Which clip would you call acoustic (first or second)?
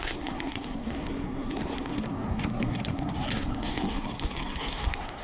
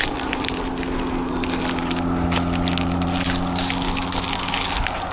second